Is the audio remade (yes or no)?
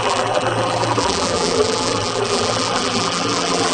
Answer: yes